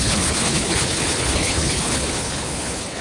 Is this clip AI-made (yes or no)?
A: yes